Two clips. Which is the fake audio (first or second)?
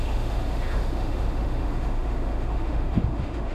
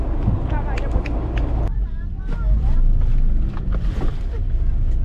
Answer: first